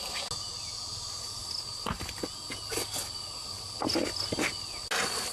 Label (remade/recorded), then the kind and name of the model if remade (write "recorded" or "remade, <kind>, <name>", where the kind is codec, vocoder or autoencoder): recorded